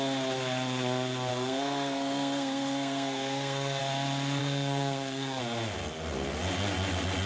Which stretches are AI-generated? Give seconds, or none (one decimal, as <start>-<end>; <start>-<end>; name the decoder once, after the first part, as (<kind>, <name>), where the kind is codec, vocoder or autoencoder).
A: 1.3-3.8 (codec, SNAC); 4.4-5.4